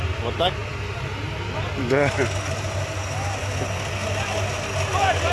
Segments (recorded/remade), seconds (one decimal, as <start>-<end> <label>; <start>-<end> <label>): 0.0-5.3 recorded